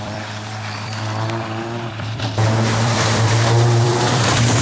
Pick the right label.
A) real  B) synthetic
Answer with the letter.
B